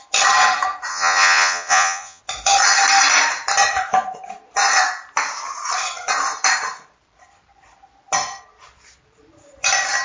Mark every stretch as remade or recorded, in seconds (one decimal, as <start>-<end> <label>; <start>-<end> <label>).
0.0-0.9 recorded; 0.9-2.2 remade; 2.2-10.0 recorded